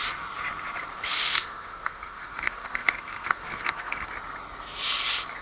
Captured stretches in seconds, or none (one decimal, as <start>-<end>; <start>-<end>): 0.0-0.9; 4.1-5.4